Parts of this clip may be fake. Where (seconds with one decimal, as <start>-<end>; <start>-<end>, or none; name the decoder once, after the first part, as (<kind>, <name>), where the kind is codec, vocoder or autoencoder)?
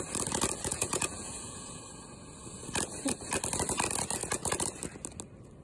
0.7-1.8 (vocoder, Vocos)